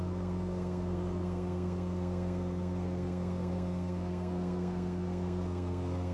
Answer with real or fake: fake